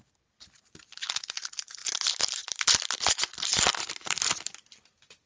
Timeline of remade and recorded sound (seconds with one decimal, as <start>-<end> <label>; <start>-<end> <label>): 0.0-5.3 recorded